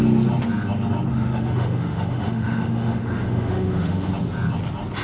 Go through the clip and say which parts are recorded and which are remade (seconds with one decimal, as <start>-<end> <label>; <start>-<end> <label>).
0.0-1.1 recorded; 1.1-4.1 remade; 4.1-5.0 recorded